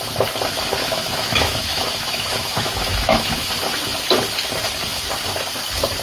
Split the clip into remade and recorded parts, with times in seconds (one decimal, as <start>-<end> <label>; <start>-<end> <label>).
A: 0.0-0.8 recorded; 0.8-3.5 remade; 3.5-6.0 recorded